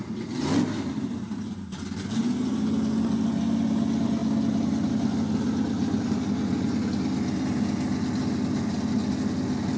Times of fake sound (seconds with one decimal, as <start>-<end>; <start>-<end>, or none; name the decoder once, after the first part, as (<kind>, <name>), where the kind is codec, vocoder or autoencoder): none